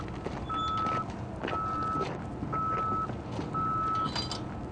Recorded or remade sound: recorded